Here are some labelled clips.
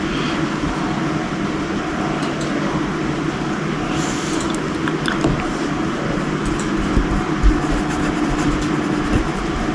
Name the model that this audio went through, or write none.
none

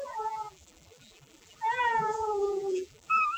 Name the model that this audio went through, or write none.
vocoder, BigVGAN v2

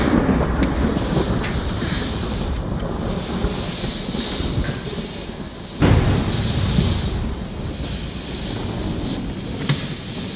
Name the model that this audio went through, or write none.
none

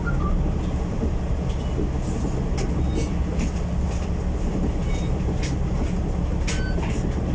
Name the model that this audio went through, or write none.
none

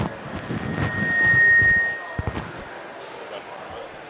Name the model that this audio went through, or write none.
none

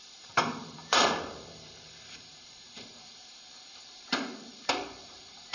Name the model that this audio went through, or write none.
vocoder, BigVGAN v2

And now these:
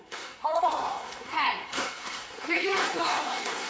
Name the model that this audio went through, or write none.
codec, SNAC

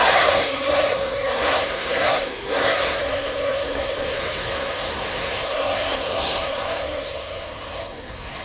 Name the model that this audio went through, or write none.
codec, SNAC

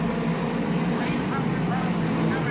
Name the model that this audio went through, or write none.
none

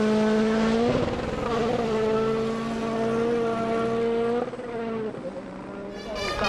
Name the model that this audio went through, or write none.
none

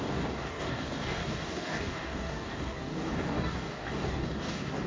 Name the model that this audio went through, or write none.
codec, DAC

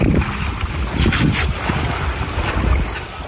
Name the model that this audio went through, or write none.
none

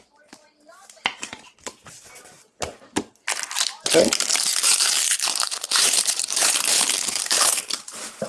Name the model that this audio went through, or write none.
vocoder, BigVGAN v2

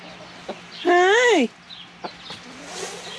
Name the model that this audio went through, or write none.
none